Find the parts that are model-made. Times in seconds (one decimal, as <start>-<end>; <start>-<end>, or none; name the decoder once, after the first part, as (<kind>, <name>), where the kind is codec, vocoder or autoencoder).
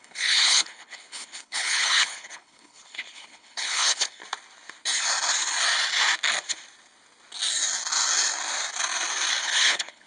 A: 0.0-4.2 (codec, HILCodec); 9.4-10.1